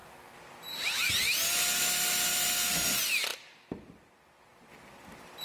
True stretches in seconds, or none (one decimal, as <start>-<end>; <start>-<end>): 0.0-5.4